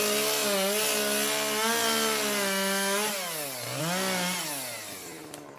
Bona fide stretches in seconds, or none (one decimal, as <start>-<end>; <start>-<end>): 0.0-5.6